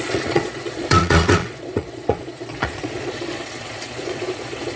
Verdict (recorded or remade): remade